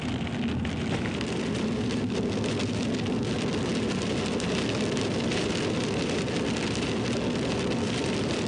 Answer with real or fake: real